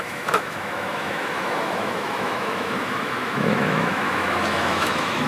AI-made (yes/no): yes